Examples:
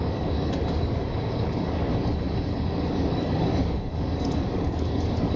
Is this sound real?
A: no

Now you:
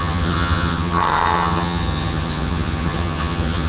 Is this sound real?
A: no